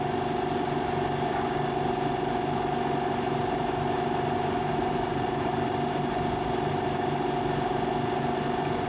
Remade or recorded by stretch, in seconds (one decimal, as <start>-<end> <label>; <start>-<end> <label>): 0.0-4.7 recorded; 4.7-6.7 remade; 6.7-8.9 recorded